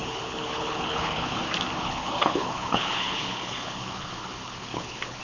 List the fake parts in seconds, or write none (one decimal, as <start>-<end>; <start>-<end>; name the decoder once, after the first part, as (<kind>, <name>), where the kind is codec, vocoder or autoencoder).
0.0-1.4 (codec, HILCodec); 1.8-5.2